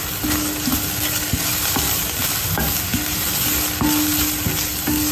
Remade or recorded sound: recorded